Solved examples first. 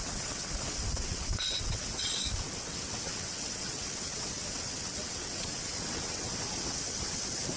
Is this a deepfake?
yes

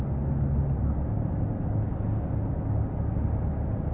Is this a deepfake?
no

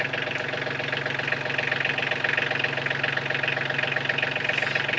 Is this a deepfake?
no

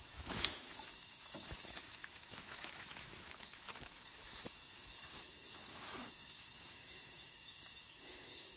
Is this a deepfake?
yes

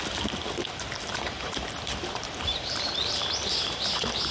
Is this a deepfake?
no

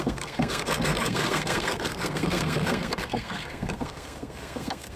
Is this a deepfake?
yes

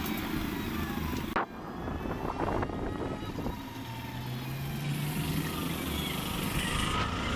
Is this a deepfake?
no